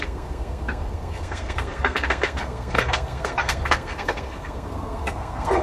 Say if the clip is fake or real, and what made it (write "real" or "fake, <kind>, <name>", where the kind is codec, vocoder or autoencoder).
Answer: fake, codec, SNAC